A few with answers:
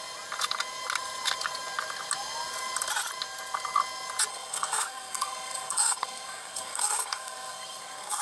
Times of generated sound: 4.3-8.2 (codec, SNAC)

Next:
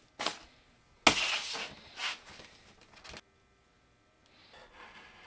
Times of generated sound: none

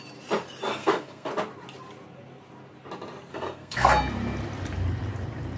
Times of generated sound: 0.7-1.3 (codec, SNAC); 3.3-3.9

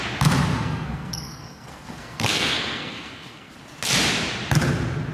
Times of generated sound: 0.5-3.5 (codec, SNAC)

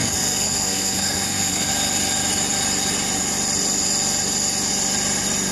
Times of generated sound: 0.0-1.7 (codec, SNAC)

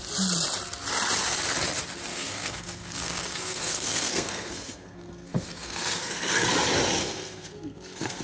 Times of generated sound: 2.1-6.5 (codec, SNAC); 7.0-8.2

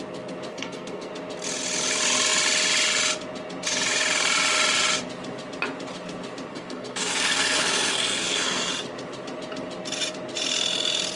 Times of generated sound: 0.5-1.1 (codec, SNAC); 6.5-8.7

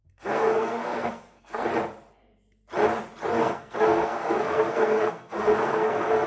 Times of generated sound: 0.0-1.7 (codec, SNAC); 3.4-6.3